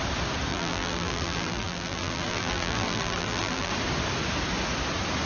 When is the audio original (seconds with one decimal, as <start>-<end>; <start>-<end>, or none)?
0.0-0.5; 3.7-5.3